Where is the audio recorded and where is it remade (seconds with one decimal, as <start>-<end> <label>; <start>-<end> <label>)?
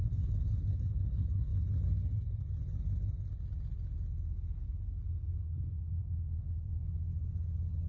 0.0-1.5 remade; 1.5-5.4 recorded; 5.4-7.1 remade; 7.1-7.9 recorded